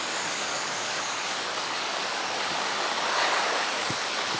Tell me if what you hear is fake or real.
fake